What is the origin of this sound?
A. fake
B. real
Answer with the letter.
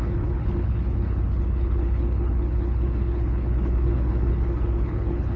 A